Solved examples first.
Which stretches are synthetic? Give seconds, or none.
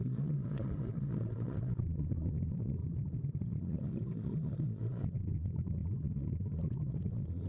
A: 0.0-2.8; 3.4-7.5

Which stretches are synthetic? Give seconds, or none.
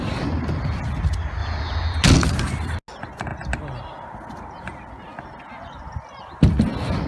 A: none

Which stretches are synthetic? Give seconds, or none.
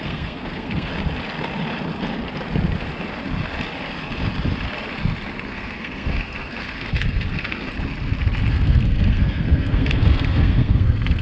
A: 0.0-0.9; 5.5-7.7; 8.5-11.2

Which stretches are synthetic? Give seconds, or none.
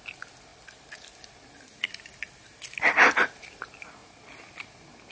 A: none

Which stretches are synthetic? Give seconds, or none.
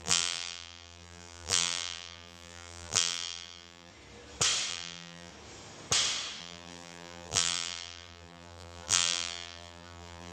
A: 0.0-3.9; 4.7-5.3; 6.4-10.3